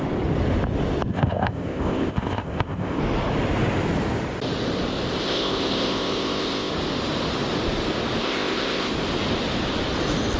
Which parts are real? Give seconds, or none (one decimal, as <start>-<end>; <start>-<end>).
0.0-1.1; 3.0-5.2; 6.7-8.2; 8.9-10.4